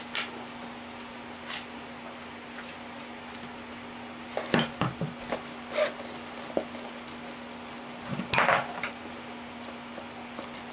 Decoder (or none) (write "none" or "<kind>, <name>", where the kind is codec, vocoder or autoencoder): none